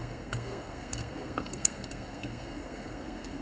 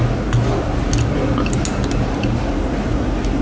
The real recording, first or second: second